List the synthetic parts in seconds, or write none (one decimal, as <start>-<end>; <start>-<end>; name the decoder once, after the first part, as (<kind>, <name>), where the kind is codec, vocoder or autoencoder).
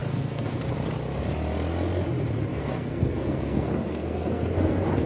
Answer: 0.0-0.6 (codec, SNAC); 2.5-5.1